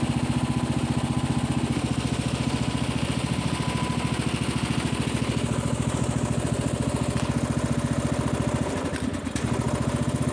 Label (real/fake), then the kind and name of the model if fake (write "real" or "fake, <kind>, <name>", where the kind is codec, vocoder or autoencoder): real